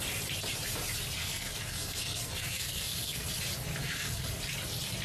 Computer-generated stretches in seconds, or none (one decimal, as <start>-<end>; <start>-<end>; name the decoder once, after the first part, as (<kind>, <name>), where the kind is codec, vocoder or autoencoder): 1.2-3.4 (codec, SNAC); 3.8-4.4